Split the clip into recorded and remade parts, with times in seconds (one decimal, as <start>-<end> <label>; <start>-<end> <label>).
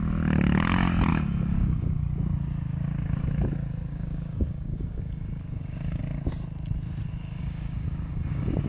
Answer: 0.0-1.1 recorded; 1.1-2.1 remade; 2.1-3.9 recorded; 3.9-6.0 remade; 6.0-7.4 recorded; 7.4-8.7 remade